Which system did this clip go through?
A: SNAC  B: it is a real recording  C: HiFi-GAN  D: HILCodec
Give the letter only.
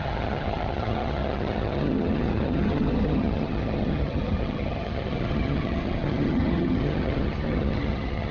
C